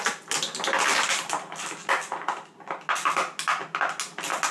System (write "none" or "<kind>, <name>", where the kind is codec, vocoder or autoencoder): none